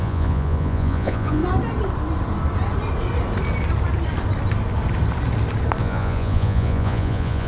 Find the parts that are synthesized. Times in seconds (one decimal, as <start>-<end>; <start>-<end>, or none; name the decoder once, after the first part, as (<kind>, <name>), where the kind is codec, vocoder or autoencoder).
0.0-1.4 (vocoder, Vocos); 5.8-7.5